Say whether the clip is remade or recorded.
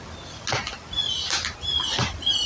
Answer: recorded